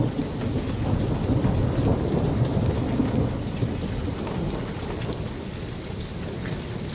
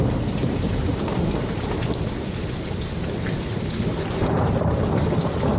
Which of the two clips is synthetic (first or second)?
second